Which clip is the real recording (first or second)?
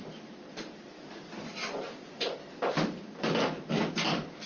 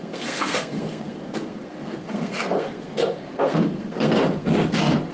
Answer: first